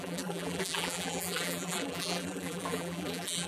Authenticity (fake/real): fake